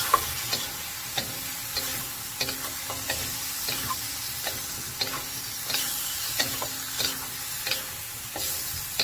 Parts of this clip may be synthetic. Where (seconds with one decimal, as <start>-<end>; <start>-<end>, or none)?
none

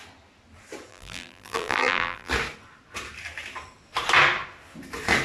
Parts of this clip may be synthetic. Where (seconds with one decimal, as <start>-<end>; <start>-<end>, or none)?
0.9-2.3

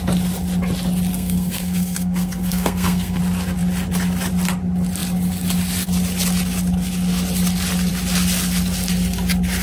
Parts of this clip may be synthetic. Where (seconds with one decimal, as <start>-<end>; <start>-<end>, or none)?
1.1-3.2

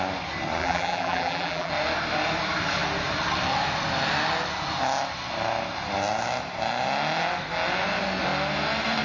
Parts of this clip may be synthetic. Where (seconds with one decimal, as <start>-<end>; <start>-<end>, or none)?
0.6-1.7

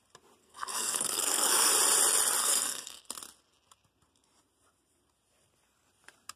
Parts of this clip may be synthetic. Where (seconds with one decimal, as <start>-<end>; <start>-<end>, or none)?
0.4-1.7; 2.4-3.1

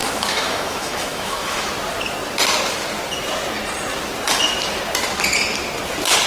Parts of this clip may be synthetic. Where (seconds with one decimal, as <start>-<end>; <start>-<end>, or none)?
0.0-1.7